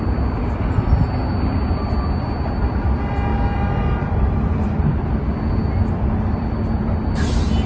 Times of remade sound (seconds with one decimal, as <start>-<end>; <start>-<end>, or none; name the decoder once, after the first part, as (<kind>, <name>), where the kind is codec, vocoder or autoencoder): 0.0-7.7 (vocoder, BigVGAN v2)